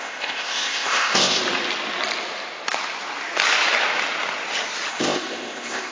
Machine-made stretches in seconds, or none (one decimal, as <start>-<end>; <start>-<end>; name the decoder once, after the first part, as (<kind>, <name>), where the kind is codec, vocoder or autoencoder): 0.0-1.4 (codec, ZipCodec); 4.9-5.9